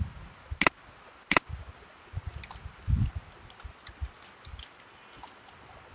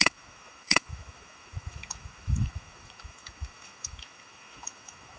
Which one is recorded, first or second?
first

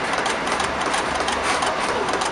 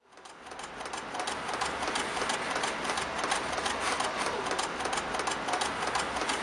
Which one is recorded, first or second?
second